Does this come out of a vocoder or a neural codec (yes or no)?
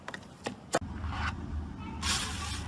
no